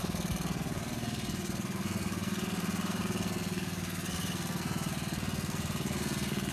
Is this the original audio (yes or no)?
no